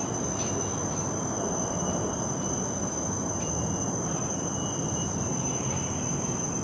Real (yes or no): yes